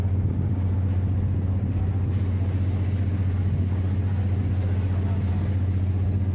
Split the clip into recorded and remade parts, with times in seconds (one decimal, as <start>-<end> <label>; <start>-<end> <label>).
0.0-6.3 recorded